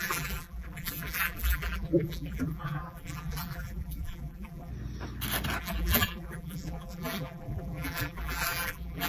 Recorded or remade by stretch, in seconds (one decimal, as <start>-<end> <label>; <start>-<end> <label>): 0.0-4.7 remade; 4.7-5.6 recorded; 5.6-9.1 remade